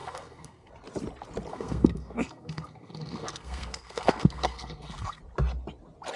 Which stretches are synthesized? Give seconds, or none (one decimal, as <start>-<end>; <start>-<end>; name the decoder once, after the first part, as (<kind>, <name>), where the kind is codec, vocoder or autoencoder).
0.0-0.7 (codec, SNAC); 1.5-5.2

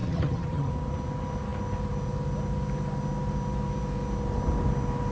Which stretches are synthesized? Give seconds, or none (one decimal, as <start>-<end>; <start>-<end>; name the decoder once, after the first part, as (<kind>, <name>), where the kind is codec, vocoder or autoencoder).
0.0-0.7 (vocoder, HiFi-GAN)

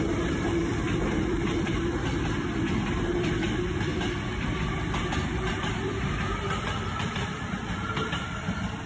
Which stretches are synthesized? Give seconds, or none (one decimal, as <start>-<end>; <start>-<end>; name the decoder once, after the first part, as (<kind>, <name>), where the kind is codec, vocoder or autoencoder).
0.0-3.9 (vocoder, BigVGAN v2); 5.5-8.9

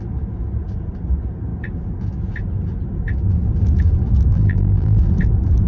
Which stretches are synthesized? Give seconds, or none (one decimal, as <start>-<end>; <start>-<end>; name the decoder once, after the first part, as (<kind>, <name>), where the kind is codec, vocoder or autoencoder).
4.3-5.0 (vocoder, BigVGAN v2)

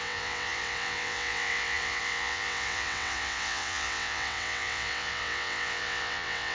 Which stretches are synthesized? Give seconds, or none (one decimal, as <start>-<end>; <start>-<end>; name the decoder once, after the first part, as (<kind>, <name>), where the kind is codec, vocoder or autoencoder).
0.0-6.5 (vocoder, WaveNeXt)